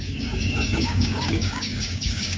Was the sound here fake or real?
fake